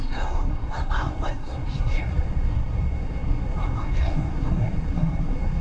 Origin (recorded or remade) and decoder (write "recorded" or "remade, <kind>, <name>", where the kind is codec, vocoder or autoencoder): remade, codec, SNAC